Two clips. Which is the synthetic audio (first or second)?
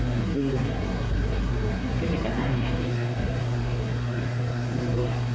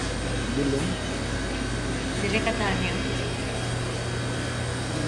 first